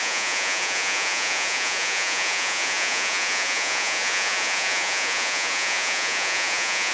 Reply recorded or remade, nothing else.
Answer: remade